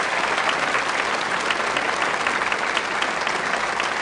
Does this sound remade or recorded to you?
recorded